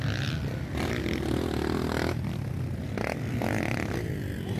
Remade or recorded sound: recorded